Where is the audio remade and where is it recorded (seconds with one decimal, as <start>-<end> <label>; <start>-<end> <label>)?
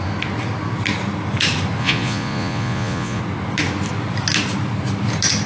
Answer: 0.0-1.8 recorded; 1.8-3.2 remade; 3.2-5.5 recorded